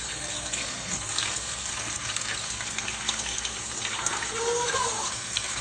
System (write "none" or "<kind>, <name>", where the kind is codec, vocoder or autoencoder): codec, SNAC